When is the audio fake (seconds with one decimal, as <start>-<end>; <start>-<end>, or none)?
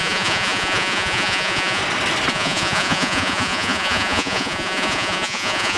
0.0-1.8; 2.3-5.8